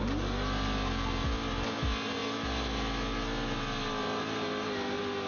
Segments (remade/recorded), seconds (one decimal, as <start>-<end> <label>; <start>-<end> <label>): 0.0-5.3 recorded